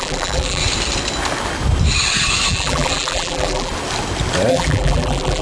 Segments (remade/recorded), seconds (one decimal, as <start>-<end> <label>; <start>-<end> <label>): 0.0-0.6 remade; 0.6-2.5 recorded; 2.5-3.7 remade; 3.7-4.5 recorded; 4.5-5.4 remade